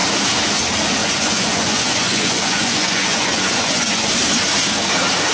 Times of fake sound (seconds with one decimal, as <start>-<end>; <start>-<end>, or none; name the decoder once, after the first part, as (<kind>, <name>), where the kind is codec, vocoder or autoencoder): 1.0-4.1 (vocoder, Vocos)

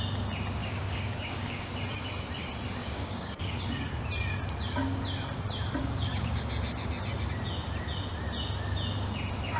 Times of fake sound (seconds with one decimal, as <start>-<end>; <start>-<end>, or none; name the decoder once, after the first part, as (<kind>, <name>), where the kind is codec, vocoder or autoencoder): 0.6-1.7 (codec, DAC); 2.8-3.6; 5.8-6.4

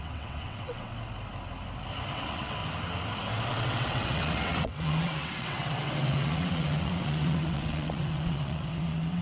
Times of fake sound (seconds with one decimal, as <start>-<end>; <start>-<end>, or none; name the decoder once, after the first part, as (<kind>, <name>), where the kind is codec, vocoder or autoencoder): 0.0-0.9 (vocoder, WaveNeXt); 2.1-2.6; 3.5-9.2